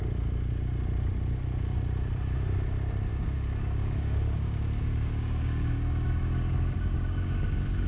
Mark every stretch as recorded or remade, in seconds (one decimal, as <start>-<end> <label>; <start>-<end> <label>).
0.0-3.1 recorded; 3.1-7.9 remade